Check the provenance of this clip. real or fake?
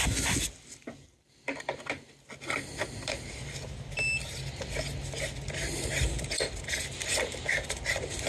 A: real